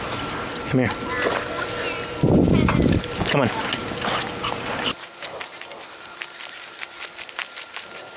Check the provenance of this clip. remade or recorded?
remade